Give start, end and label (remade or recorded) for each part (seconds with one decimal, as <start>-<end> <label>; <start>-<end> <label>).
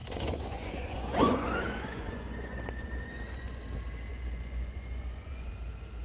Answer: 0.0-3.6 remade; 3.6-4.1 recorded; 4.1-5.5 remade; 5.5-6.0 recorded